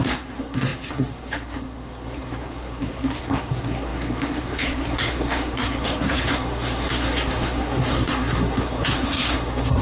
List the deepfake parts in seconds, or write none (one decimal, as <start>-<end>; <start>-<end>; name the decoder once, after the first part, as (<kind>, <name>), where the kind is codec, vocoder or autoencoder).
0.0-9.8 (codec, SNAC)